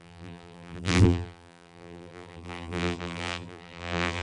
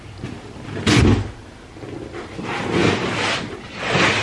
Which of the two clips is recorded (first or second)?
second